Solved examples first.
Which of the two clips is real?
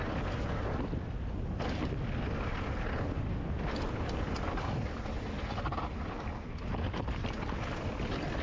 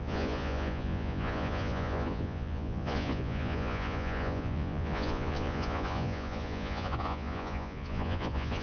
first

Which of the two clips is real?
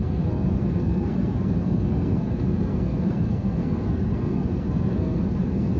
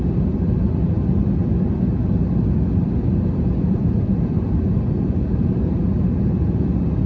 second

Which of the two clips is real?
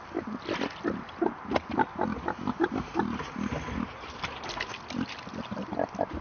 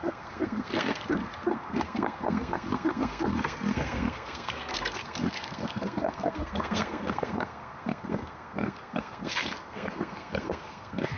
first